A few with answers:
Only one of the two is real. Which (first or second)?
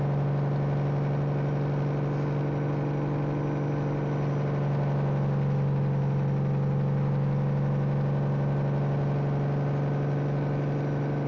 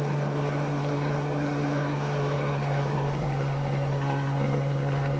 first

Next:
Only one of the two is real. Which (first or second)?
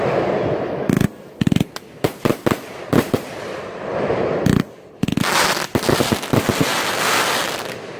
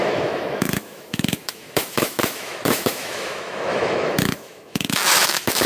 first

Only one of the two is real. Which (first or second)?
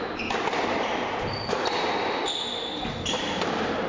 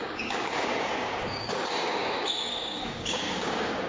first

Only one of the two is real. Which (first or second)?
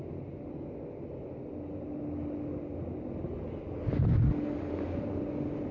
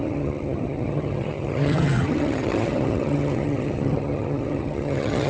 first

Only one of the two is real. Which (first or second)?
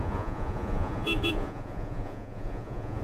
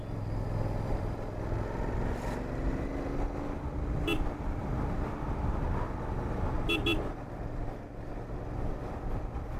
second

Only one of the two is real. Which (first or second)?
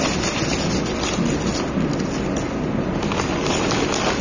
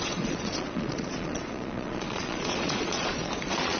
first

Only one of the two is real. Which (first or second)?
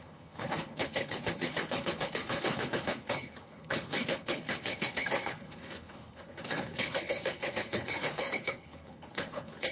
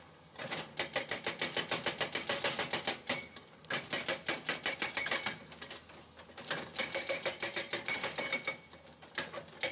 second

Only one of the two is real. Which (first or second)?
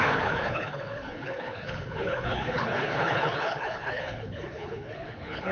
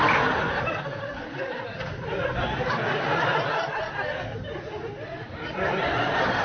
second